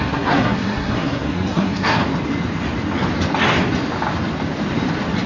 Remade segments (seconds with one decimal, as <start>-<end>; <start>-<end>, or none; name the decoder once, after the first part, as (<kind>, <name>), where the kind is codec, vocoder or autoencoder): 0.0-2.0 (codec, SNAC)